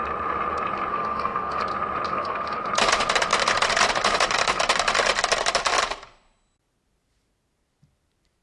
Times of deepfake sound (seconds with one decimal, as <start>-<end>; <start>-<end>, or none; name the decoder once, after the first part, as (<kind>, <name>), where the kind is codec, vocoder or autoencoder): 0.9-1.6 (codec, SNAC); 2.1-2.6

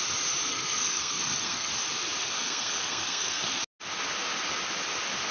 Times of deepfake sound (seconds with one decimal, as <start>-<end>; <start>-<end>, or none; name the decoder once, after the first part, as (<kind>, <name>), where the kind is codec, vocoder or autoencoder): 0.5-1.7 (codec, SNAC); 2.2-3.4

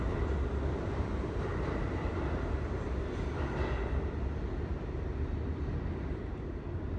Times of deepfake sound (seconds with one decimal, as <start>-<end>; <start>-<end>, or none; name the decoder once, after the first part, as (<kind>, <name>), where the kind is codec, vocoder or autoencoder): none

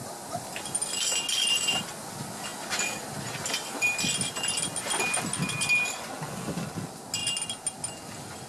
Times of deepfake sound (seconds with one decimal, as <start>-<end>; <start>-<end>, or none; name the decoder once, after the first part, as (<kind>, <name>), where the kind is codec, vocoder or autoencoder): none

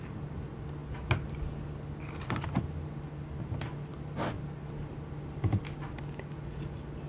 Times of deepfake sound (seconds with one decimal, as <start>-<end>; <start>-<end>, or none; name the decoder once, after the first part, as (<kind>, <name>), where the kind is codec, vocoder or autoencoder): none